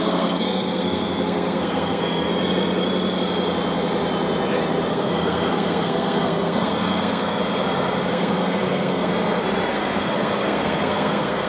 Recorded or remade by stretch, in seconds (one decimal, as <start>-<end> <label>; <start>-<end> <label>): 0.0-2.3 remade; 2.3-4.9 recorded; 4.9-7.4 remade; 7.4-8.1 recorded; 8.1-9.1 remade; 9.1-9.7 recorded; 9.7-11.5 remade